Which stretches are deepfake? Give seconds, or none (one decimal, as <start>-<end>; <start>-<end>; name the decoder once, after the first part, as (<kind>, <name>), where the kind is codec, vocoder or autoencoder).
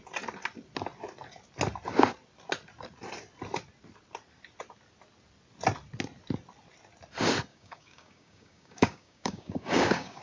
7.5-10.2 (codec, DAC)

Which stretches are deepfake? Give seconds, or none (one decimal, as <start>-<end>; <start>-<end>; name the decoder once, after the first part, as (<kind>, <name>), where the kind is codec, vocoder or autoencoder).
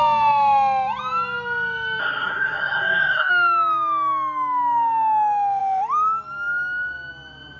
2.0-3.3 (codec, SNAC)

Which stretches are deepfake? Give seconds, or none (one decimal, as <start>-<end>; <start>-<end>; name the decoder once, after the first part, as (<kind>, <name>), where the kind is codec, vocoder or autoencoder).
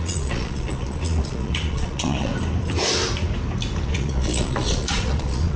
0.0-2.3 (vocoder, Vocos); 3.8-5.6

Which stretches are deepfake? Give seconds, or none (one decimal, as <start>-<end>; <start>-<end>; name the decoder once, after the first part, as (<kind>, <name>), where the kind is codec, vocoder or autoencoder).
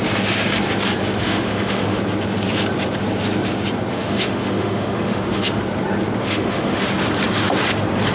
1.2-2.0 (autoencoder, DAC-VAE); 3.9-5.6; 6.2-6.9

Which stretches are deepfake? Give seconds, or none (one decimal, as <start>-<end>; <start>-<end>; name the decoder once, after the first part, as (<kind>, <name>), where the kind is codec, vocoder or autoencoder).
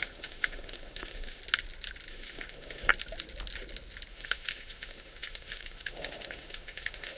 0.0-1.4 (autoencoder, DAC-VAE); 2.1-2.9; 4.1-7.2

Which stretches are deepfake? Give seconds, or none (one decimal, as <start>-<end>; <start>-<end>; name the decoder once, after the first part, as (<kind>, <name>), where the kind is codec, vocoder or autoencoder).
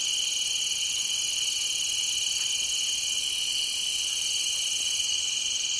none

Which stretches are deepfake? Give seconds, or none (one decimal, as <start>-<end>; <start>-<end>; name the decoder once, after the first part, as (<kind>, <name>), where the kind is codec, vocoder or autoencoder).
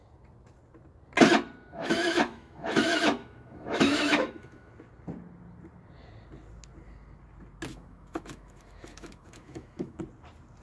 1.7-4.7 (autoencoder, DAC-VAE); 7.7-10.0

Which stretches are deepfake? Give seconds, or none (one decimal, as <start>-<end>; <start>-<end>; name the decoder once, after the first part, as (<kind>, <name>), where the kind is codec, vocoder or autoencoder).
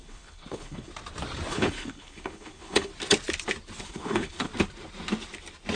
0.0-0.9 (codec, HILCodec); 1.5-2.9; 3.8-4.5